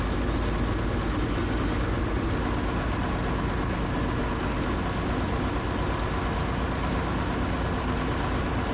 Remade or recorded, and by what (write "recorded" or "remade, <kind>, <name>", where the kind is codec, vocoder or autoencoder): recorded